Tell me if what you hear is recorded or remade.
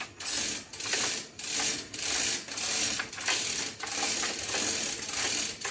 recorded